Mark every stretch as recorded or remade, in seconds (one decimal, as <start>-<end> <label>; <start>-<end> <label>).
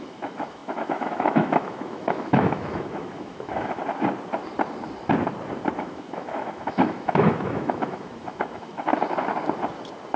0.0-3.8 remade; 3.8-5.8 recorded; 5.8-8.9 remade; 8.9-10.2 recorded